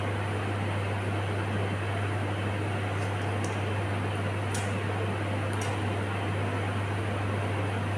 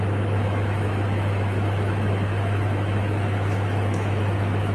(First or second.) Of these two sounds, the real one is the first